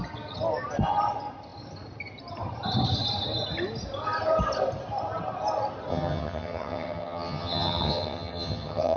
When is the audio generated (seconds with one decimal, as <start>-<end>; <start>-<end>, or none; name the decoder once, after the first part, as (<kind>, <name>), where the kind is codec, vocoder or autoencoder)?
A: 5.9-9.0 (vocoder, HiFi-GAN)